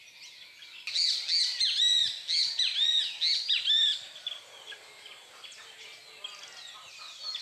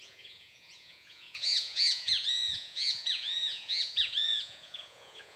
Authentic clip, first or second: first